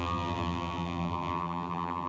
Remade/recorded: remade